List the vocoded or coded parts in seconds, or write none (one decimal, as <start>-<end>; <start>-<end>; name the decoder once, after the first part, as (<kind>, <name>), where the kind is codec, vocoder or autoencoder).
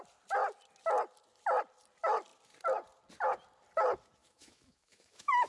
4.2-5.5 (autoencoder, DAC-VAE)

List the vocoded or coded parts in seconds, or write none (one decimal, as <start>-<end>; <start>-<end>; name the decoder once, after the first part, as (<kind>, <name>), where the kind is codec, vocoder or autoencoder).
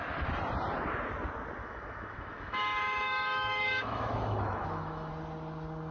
1.6-5.1 (autoencoder, DAC-VAE)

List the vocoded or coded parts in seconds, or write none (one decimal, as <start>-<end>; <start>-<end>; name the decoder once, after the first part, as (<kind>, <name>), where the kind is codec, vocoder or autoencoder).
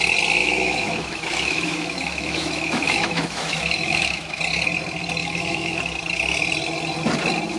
0.4-4.4 (autoencoder, DAC-VAE); 5.2-5.8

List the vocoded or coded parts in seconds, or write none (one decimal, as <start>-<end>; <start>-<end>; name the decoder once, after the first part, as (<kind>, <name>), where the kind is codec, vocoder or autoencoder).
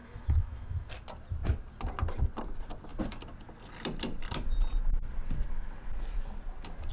0.0-0.9 (autoencoder, DAC-VAE)